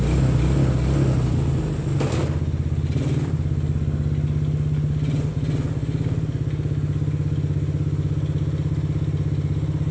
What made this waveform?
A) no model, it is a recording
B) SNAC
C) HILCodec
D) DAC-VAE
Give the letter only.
A